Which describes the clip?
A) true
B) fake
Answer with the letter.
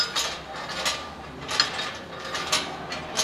A